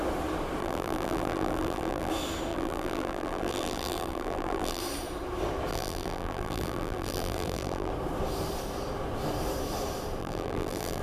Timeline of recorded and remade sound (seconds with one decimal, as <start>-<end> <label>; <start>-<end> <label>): 0.0-0.6 recorded; 0.6-2.1 remade; 2.1-2.5 recorded; 2.5-4.8 remade; 4.8-5.7 recorded; 5.7-7.9 remade; 7.9-10.2 recorded; 10.2-11.0 remade